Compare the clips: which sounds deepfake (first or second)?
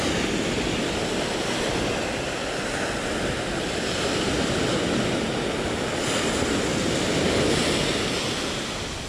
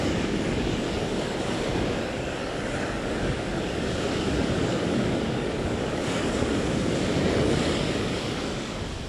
second